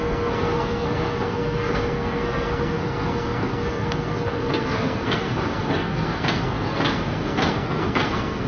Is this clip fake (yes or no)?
yes